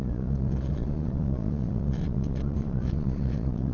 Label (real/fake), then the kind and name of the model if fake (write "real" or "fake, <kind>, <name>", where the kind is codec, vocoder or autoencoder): fake, vocoder, Vocos